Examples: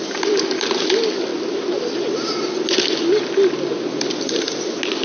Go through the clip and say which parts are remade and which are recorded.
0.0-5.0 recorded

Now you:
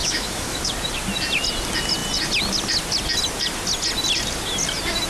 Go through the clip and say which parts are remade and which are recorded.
0.0-0.7 remade; 0.7-5.1 recorded

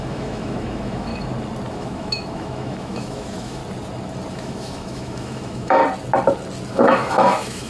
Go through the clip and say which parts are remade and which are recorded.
0.0-1.1 remade; 1.1-1.7 recorded; 1.7-3.6 remade; 3.6-4.3 recorded; 4.3-5.8 remade; 5.8-6.7 recorded; 6.7-7.7 remade